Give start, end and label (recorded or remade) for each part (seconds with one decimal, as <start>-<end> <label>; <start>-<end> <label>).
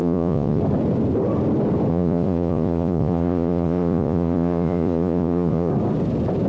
0.0-0.6 remade; 0.6-1.9 recorded; 1.9-5.7 remade; 5.7-6.5 recorded